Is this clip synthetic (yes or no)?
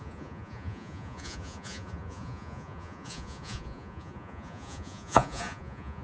yes